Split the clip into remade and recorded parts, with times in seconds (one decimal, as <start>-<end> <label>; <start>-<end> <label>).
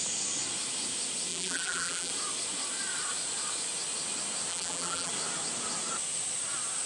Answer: 0.0-1.3 recorded; 1.3-2.1 remade; 2.1-4.5 recorded; 4.5-5.1 remade; 5.1-6.9 recorded